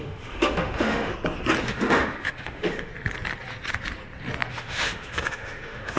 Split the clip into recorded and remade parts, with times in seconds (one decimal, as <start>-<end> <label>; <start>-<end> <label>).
0.0-1.1 remade; 1.1-1.6 recorded; 1.6-2.9 remade; 2.9-4.5 recorded; 4.5-6.0 remade